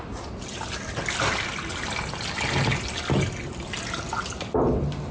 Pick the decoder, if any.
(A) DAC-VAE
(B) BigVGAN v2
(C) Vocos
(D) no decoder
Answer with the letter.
D